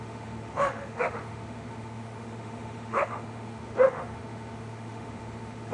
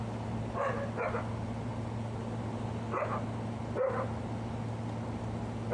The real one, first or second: second